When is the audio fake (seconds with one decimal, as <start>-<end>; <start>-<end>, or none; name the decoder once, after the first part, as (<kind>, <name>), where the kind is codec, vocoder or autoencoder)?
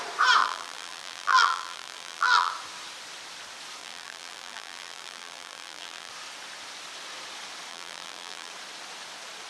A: 0.4-2.5 (vocoder, BigVGAN v2); 3.8-6.1; 7.7-8.5